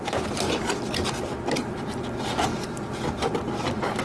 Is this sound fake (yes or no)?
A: yes